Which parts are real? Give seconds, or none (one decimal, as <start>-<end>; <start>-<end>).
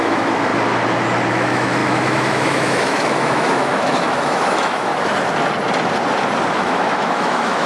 0.5-1.3; 4.9-6.5